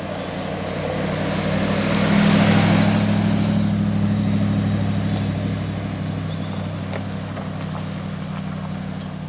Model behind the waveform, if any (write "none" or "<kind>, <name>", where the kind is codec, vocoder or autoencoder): none